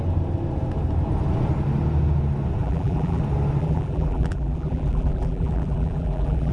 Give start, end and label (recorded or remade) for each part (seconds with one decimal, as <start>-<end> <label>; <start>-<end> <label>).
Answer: 0.0-2.6 recorded; 2.6-3.2 remade; 3.2-3.6 recorded; 3.6-6.5 remade